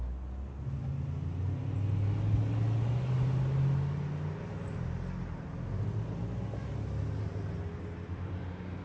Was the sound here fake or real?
real